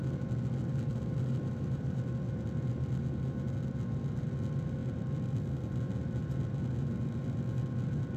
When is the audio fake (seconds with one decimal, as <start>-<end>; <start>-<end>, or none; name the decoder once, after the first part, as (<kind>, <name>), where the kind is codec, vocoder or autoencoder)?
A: 0.9-2.0 (vocoder, BigVGAN v2)